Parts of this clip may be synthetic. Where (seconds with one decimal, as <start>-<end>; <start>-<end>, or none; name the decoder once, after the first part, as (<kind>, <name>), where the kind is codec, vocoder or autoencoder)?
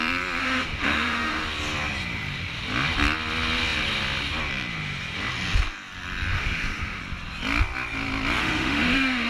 0.4-1.4 (autoencoder, DAC-VAE); 6.3-7.0; 8.4-9.3